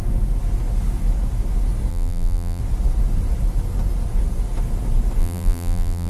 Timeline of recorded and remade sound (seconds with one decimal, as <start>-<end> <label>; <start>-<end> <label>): 0.0-1.9 recorded; 1.9-2.6 remade; 2.6-5.2 recorded; 5.2-6.1 remade